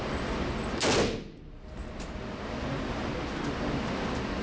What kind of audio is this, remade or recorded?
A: recorded